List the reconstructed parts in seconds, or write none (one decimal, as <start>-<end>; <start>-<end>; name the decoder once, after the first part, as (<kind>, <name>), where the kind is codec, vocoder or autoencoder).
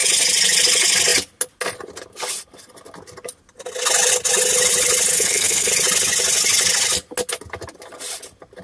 5.1-5.7 (codec, SNAC)